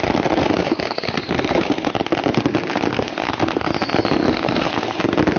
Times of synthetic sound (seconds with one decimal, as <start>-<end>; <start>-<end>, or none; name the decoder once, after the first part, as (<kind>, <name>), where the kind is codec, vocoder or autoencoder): 0.4-1.9 (codec, SNAC); 2.9-3.7; 4.3-5.0